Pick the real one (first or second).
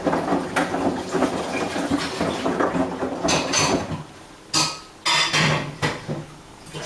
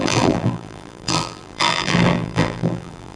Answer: first